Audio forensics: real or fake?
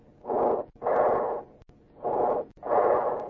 real